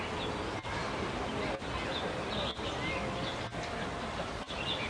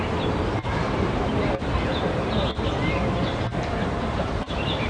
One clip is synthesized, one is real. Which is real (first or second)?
first